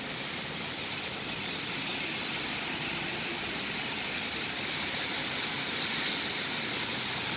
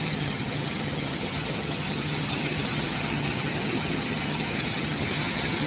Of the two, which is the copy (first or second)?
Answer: second